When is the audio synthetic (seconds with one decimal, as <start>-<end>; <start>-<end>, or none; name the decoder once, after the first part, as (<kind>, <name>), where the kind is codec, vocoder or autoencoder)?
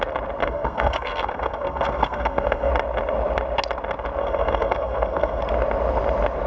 0.4-2.7 (codec, SNAC); 4.2-5.4